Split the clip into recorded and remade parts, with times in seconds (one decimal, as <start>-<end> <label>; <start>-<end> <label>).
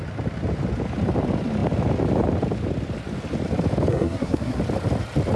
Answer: 0.0-3.9 recorded; 3.9-4.6 remade; 4.6-5.4 recorded